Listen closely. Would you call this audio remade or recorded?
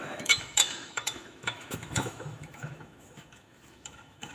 remade